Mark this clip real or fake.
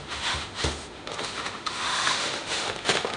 fake